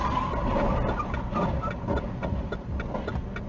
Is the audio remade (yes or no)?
no